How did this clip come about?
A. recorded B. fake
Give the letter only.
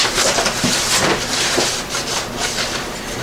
A